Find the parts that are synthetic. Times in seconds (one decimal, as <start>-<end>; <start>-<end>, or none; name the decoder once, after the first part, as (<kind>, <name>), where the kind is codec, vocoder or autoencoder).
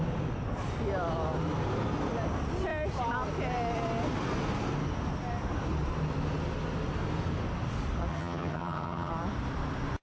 8.1-9.1 (vocoder, HiFi-GAN)